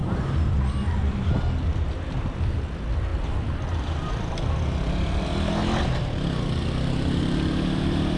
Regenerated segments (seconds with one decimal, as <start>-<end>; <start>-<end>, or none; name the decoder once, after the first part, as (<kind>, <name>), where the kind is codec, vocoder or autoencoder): 3.1-4.3 (vocoder, BigVGAN v2)